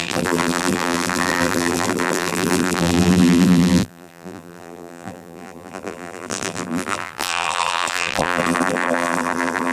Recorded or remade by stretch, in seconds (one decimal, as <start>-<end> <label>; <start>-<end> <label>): 0.0-9.7 remade